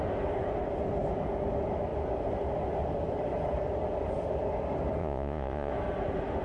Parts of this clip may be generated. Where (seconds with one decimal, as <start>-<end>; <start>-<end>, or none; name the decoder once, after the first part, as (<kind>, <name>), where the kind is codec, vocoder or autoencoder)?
5.0-5.7 (vocoder, Vocos)